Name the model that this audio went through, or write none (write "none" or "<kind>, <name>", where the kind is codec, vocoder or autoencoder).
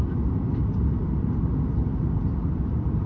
none